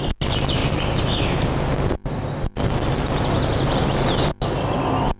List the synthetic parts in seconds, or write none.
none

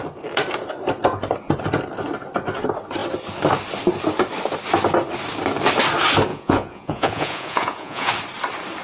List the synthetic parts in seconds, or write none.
6.3-8.1 (vocoder, Vocos)